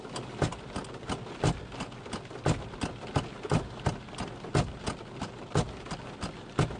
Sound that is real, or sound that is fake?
real